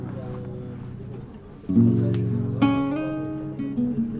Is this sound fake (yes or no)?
no